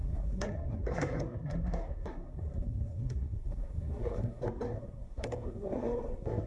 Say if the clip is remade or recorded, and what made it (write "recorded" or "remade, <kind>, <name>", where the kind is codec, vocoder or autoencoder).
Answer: remade, codec, SNAC